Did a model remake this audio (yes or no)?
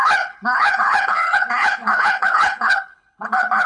yes